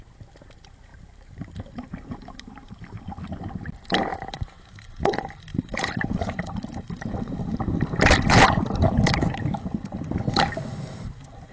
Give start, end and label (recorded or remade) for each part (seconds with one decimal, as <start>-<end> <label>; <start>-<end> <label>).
0.0-0.9 recorded; 0.9-2.7 remade; 2.7-4.1 recorded; 4.1-5.0 remade; 5.0-5.5 recorded; 5.5-7.9 remade; 7.9-11.5 recorded